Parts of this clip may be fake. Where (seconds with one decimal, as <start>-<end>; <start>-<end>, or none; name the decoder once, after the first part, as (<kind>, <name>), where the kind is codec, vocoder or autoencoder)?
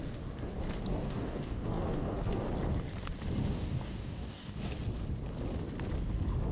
0.9-2.5 (codec, DAC); 3.4-4.7